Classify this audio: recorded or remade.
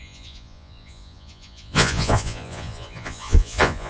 remade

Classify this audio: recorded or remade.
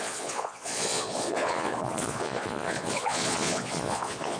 remade